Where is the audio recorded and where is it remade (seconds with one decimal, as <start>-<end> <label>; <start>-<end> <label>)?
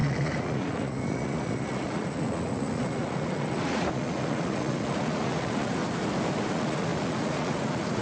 0.0-5.8 remade; 5.8-6.5 recorded; 6.5-8.0 remade